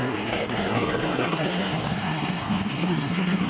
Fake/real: fake